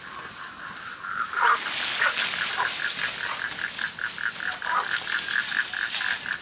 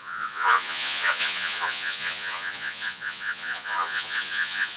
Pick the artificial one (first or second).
second